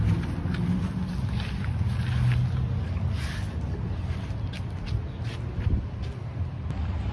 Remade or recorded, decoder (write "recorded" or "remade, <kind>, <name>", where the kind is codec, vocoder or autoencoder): recorded